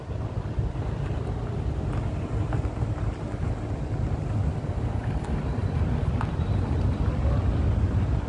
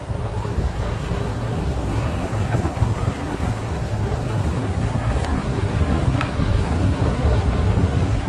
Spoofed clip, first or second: second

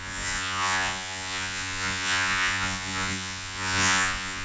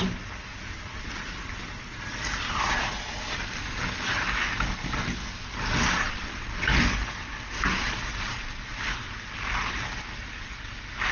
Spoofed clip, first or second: first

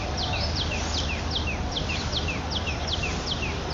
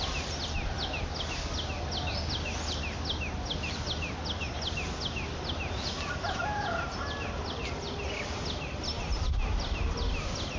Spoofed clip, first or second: first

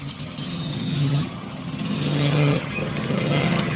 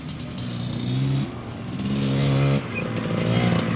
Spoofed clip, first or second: first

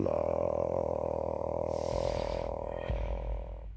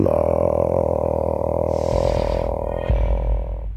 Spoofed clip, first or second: first